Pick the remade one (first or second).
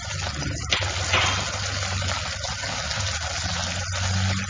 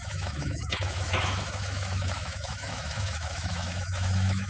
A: second